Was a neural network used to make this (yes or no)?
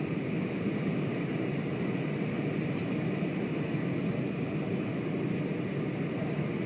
no